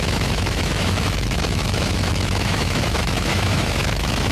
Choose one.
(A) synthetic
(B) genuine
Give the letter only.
A